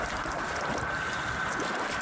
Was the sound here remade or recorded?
recorded